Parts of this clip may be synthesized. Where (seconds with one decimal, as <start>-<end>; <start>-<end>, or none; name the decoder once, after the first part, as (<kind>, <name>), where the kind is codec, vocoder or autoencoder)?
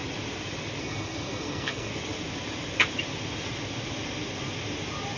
0.8-1.9 (codec, SNAC)